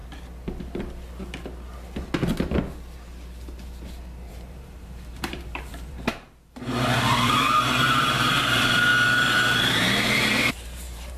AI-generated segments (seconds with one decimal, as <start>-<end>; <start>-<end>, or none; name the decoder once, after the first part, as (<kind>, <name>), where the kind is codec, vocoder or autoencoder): 4.3-8.9 (vocoder, BigVGAN v2); 9.6-11.2